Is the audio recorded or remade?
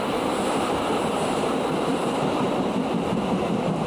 remade